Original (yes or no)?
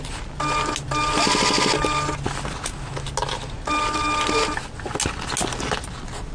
yes